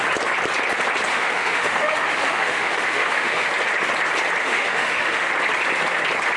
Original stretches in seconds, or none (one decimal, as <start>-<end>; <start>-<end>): 0.0-1.1; 3.5-4.4; 5.3-6.4